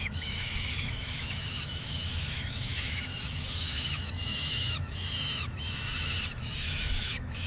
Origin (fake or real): fake